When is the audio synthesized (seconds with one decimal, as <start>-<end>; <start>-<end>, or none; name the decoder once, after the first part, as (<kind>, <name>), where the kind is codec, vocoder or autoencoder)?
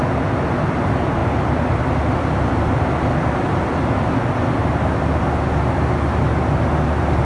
1.2-2.5 (vocoder, BigVGAN v2)